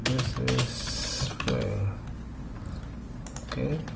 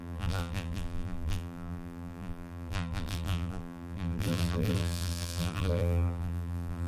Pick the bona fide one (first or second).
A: first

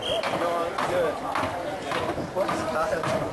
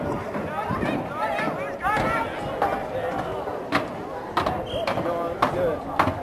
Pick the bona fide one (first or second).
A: second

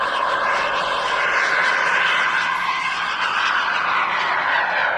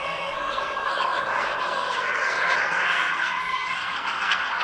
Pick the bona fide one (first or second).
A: first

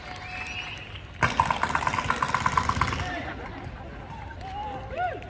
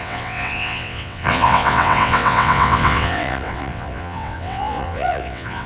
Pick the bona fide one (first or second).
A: first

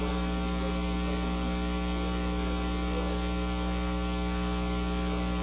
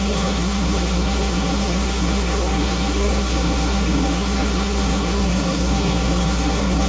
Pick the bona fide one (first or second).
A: first